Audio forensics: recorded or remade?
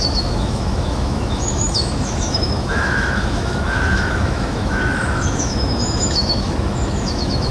remade